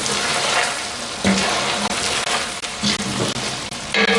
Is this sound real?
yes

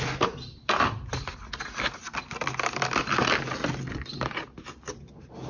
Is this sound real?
yes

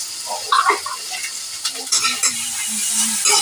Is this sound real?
yes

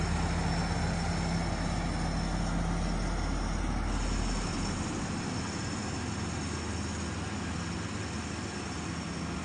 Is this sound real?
yes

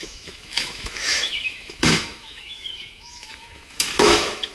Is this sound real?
no